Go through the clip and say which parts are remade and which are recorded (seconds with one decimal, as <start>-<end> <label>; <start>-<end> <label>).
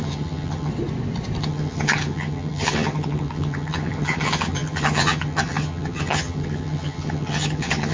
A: 0.0-0.7 remade; 0.7-1.4 recorded; 1.4-7.9 remade